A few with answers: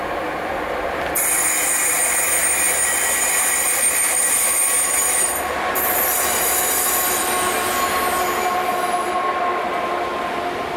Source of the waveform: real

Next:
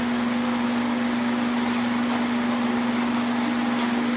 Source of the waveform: real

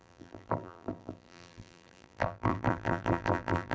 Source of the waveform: fake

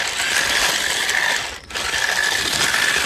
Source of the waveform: real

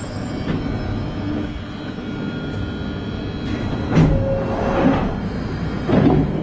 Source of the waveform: real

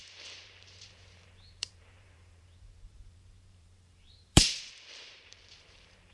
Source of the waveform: fake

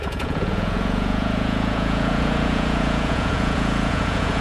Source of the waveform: fake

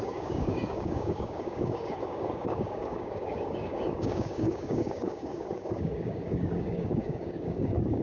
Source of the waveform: fake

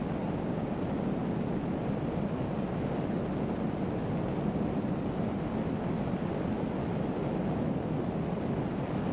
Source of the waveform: real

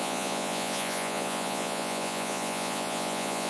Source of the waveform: fake